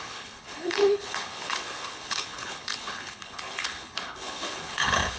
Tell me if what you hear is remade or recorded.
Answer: remade